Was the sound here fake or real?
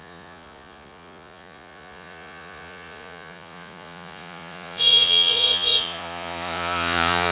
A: fake